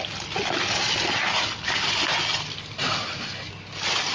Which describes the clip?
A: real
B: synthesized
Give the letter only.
A